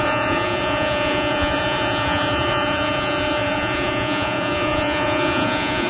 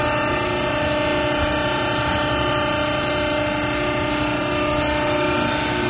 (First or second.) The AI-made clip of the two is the first